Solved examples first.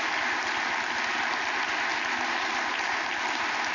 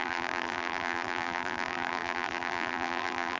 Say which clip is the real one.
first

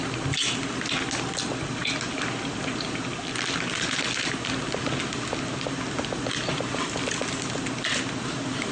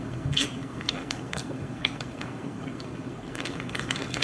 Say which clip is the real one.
first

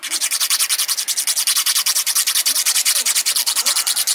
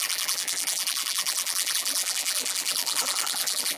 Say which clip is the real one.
first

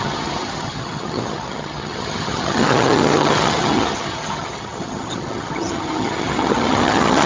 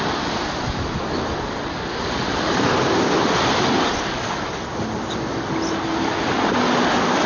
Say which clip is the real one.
second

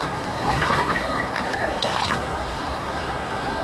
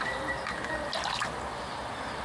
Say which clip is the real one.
second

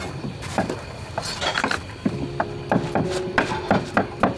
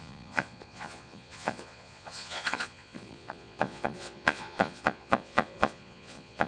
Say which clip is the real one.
first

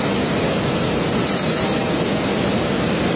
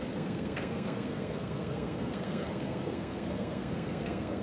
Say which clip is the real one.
first